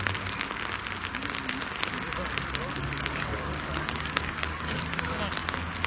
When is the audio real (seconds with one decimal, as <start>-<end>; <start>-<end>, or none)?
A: 0.0-2.8; 4.9-5.9